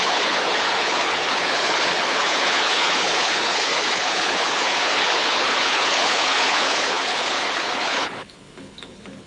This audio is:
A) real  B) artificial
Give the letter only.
B